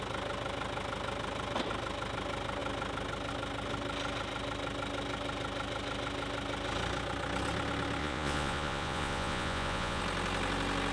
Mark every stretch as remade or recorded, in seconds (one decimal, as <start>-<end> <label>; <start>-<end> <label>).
0.0-8.0 recorded; 8.0-10.0 remade; 10.0-10.9 recorded